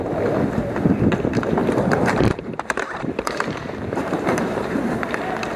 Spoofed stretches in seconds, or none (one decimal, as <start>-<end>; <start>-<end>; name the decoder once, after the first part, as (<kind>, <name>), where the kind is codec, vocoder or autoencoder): 1.6-5.0 (vocoder, BigVGAN v2)